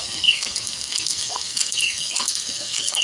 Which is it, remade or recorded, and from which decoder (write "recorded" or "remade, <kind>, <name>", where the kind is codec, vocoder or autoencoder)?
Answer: remade, codec, SNAC